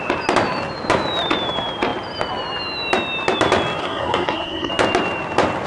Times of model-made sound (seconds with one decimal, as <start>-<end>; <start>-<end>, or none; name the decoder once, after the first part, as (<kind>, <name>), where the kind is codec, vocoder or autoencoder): 3.8-4.7 (codec, SNAC)